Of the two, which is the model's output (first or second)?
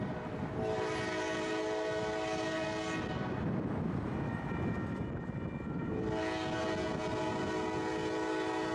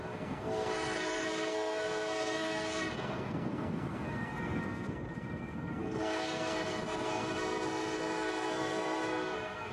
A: second